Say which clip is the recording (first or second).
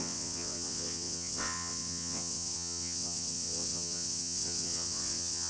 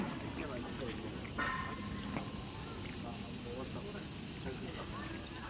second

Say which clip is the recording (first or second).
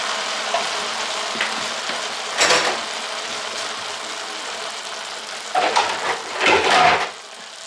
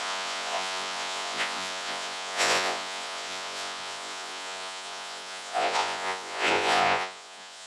first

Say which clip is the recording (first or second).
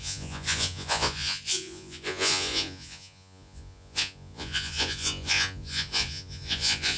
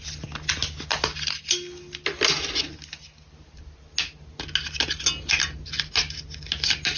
second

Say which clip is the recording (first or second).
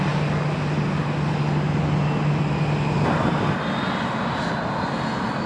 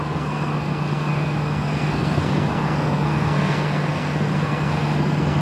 first